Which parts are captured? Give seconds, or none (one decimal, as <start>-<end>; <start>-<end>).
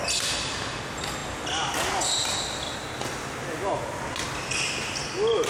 0.0-5.5